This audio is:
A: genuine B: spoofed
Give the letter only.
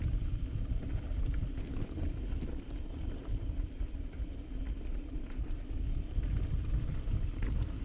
A